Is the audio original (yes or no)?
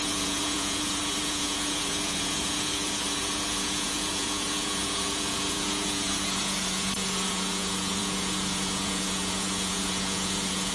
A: no